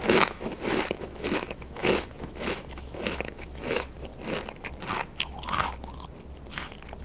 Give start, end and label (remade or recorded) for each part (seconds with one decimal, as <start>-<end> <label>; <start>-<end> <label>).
0.0-4.1 remade; 4.1-7.0 recorded